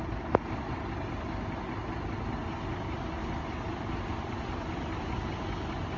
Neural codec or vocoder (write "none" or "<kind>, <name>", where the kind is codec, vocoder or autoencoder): none